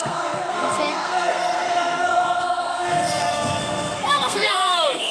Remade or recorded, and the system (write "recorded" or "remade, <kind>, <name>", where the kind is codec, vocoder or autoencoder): remade, codec, SNAC